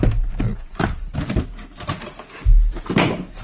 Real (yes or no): yes